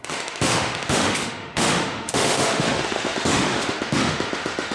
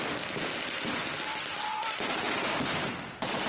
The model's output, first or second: first